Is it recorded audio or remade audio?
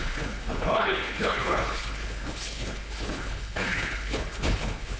remade